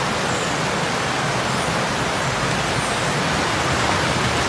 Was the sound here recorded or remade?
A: recorded